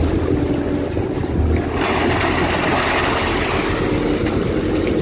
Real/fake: real